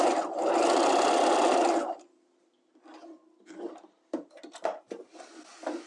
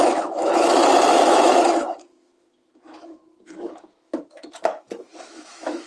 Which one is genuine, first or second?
first